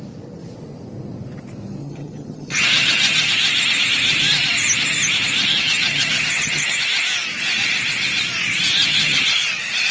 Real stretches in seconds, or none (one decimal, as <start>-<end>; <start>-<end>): 0.0-1.8; 3.3-5.5; 6.8-8.9; 9.5-9.9